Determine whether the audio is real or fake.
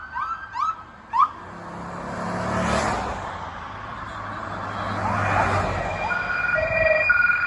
real